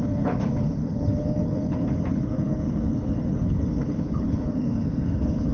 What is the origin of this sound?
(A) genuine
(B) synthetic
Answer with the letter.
B